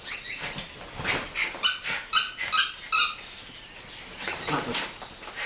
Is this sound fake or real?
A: real